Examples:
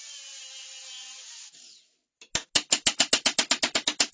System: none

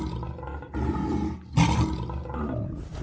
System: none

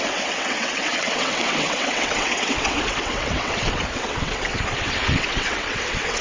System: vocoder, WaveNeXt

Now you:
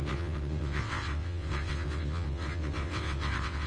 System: vocoder, WaveNeXt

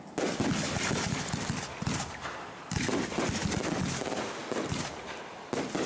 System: none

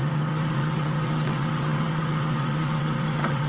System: vocoder, WaveNeXt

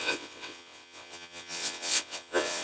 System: vocoder, WaveNeXt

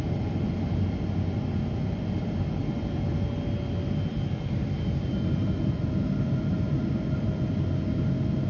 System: none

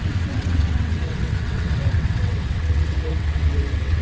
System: vocoder, WaveNeXt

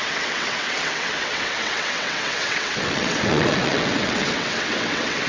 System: vocoder, WaveNeXt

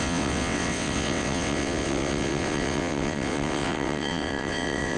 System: vocoder, WaveNeXt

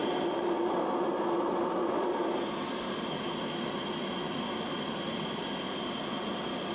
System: none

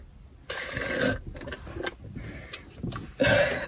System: none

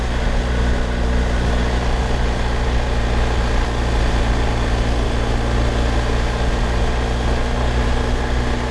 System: none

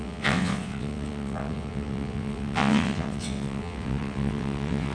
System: vocoder, WaveNeXt